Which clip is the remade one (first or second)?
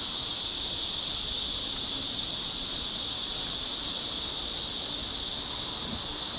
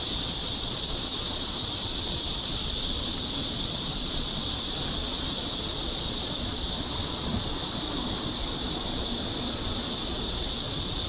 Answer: second